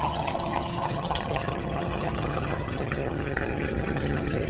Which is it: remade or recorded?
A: remade